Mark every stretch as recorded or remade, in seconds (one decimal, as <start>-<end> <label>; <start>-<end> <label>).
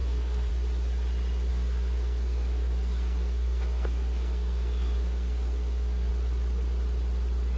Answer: 0.0-0.5 remade; 0.5-1.5 recorded; 1.5-6.1 remade; 6.1-7.6 recorded